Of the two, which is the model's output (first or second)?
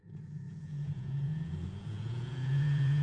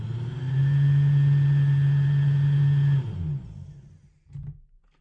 first